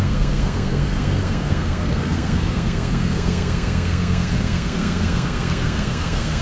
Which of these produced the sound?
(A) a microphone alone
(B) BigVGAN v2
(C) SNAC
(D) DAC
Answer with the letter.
C